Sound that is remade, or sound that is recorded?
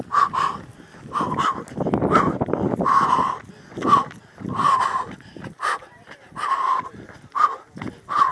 recorded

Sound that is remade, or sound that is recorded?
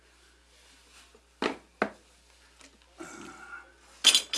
recorded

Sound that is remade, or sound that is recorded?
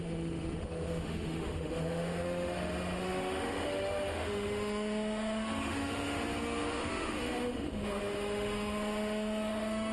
remade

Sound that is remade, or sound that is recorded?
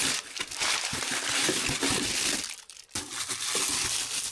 recorded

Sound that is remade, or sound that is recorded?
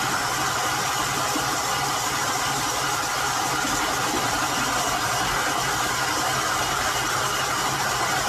recorded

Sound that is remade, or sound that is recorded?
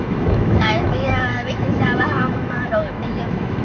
remade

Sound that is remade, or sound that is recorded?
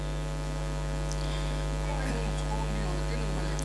recorded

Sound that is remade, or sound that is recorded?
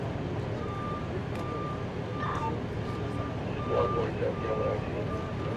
recorded